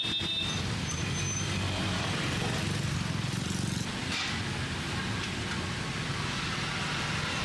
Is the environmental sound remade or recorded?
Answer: recorded